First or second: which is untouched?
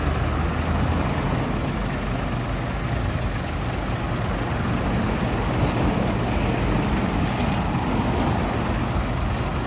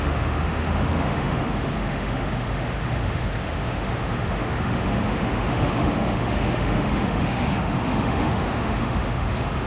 first